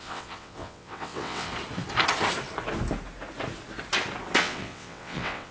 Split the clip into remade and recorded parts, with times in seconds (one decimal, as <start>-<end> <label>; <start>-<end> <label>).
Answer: 0.0-1.5 remade; 1.5-4.4 recorded; 4.4-5.5 remade

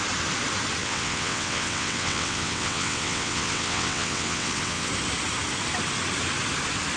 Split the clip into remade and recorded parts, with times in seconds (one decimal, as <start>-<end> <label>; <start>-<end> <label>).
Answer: 0.0-0.8 recorded; 0.8-4.9 remade; 4.9-7.0 recorded

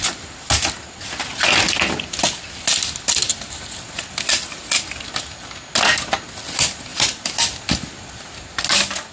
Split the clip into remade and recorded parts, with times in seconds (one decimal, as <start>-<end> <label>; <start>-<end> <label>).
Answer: 0.0-9.1 recorded

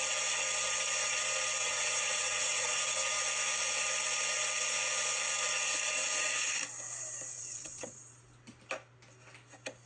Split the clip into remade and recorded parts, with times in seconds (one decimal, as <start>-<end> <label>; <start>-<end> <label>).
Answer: 0.0-1.6 recorded; 1.6-2.8 remade; 2.8-7.3 recorded; 7.3-8.0 remade; 8.0-9.9 recorded

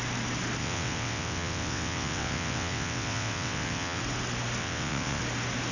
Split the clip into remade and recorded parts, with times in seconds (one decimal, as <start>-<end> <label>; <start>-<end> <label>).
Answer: 0.0-0.6 recorded; 0.6-4.0 remade; 4.0-4.6 recorded; 4.6-5.2 remade; 5.2-5.7 recorded

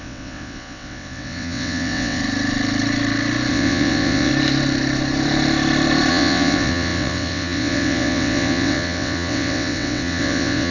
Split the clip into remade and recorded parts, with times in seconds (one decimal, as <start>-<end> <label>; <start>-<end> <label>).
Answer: 0.0-2.2 remade; 2.2-3.5 recorded; 3.5-4.3 remade; 4.3-6.1 recorded; 6.1-10.7 remade